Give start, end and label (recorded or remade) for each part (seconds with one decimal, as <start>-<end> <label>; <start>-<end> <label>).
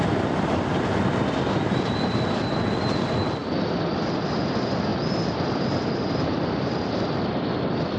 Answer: 0.0-8.0 recorded